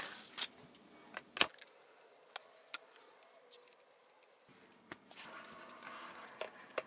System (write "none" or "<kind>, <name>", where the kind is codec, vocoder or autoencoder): none